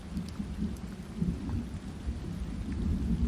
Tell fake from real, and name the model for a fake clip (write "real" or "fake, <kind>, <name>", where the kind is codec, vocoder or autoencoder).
real